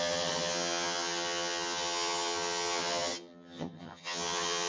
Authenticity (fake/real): fake